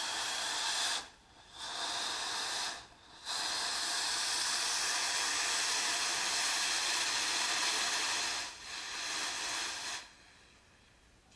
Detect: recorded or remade recorded